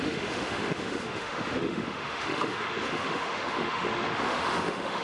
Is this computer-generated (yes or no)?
yes